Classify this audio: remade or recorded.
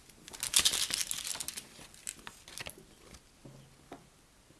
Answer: recorded